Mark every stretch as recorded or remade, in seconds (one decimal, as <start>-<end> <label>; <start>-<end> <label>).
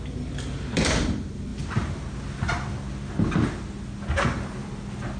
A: 0.0-5.2 recorded